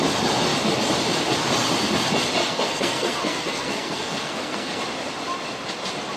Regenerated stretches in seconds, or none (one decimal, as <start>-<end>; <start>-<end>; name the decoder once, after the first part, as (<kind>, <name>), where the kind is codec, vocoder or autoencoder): 2.4-4.8 (codec, SNAC)